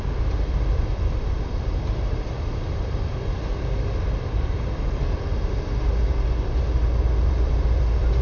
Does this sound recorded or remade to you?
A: remade